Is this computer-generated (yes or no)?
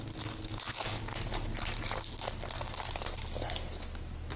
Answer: no